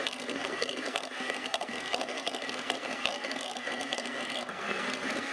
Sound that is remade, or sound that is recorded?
remade